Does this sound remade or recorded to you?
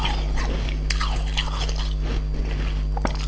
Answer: recorded